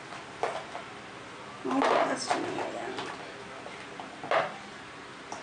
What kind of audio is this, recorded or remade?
recorded